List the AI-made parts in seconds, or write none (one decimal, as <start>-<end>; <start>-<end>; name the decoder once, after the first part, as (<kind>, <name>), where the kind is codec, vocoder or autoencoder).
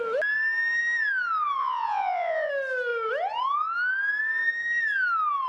1.6-2.5 (vocoder, Vocos)